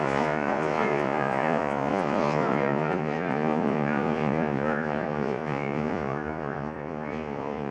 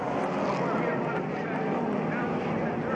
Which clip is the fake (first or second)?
first